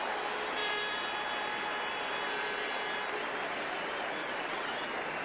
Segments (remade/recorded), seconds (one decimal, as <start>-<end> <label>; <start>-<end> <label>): 0.0-4.2 recorded; 4.2-4.7 remade; 4.7-5.2 recorded